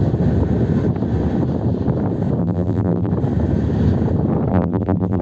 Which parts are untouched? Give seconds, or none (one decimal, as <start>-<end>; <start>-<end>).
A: 0.0-2.4; 3.1-4.5